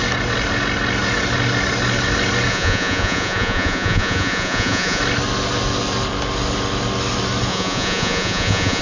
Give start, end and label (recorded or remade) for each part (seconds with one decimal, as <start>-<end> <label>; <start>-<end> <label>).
0.0-2.5 recorded; 2.5-5.0 remade; 5.0-7.5 recorded; 7.5-8.8 remade